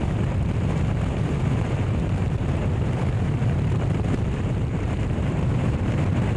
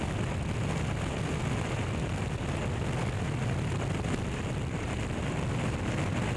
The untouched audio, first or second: second